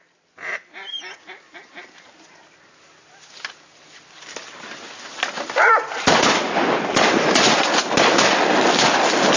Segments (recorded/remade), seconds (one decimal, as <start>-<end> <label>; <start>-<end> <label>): 0.0-9.4 recorded